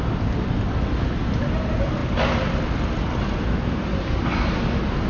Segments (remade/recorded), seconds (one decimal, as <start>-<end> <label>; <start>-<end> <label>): 0.0-5.1 recorded